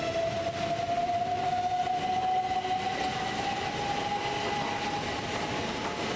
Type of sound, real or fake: real